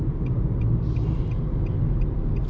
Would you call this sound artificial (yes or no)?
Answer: no